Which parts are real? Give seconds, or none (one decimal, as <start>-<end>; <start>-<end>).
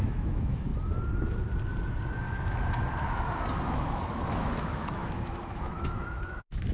0.7-3.7